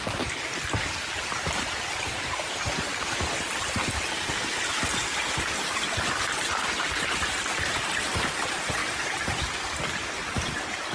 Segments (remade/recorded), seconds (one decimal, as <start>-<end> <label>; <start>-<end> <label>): 0.0-2.9 remade; 2.9-7.3 recorded; 7.3-8.8 remade; 8.8-9.5 recorded; 9.5-10.9 remade